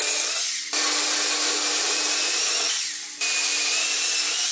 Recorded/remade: recorded